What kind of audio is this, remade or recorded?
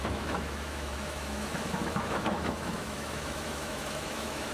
remade